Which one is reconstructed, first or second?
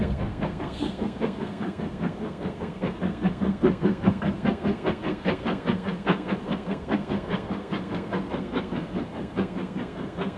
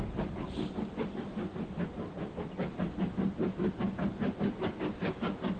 first